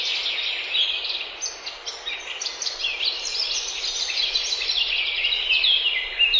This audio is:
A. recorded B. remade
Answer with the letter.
A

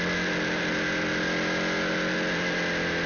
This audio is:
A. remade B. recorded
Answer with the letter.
B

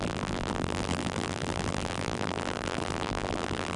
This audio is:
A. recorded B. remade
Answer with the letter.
B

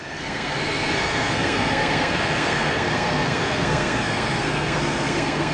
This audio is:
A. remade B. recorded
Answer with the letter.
A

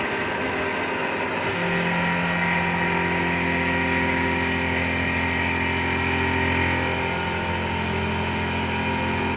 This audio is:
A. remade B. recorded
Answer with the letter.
B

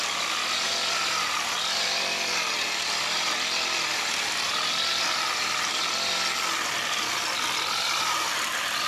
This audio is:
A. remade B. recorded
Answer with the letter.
B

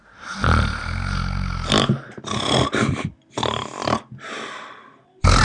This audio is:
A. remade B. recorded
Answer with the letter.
B